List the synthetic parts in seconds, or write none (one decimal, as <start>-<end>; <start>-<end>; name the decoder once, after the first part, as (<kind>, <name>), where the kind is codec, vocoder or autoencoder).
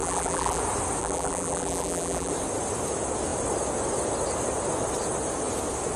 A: 0.0-0.6 (vocoder, BigVGAN v2); 1.0-2.3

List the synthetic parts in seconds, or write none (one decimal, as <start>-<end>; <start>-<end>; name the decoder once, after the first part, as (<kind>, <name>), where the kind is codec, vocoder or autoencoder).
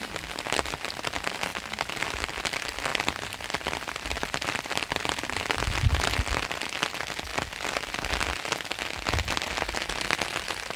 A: 2.9-6.3 (vocoder, BigVGAN v2)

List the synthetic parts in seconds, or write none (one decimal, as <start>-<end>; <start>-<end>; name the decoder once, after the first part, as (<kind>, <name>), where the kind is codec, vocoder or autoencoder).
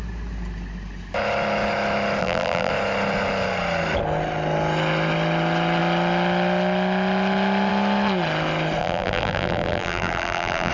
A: 2.2-2.7 (vocoder, BigVGAN v2); 8.8-10.7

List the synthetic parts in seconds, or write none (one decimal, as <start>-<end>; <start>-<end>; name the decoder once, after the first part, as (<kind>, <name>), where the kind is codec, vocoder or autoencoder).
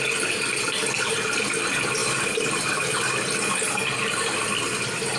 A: 2.0-3.0 (vocoder, BigVGAN v2)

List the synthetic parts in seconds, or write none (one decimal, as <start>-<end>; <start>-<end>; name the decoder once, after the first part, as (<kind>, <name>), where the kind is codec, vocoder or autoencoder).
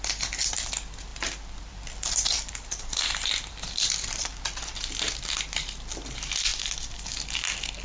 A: 1.1-5.8 (vocoder, BigVGAN v2)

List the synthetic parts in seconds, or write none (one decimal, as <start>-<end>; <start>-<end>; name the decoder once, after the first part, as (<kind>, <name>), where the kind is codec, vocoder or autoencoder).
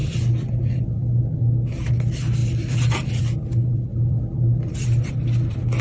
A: 0.0-1.2 (vocoder, BigVGAN v2); 2.4-3.2; 3.7-5.1